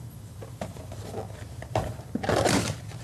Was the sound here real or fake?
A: real